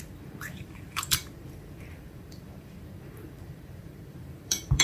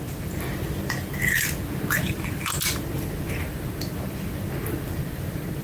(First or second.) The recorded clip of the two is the second